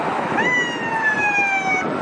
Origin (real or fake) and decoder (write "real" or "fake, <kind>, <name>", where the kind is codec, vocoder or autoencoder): real